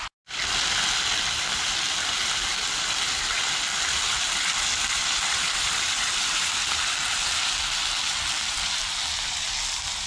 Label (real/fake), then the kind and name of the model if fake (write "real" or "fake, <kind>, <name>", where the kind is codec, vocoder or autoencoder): real